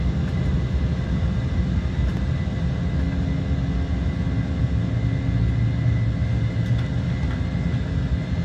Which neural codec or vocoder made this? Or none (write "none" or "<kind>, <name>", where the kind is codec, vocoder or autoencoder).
none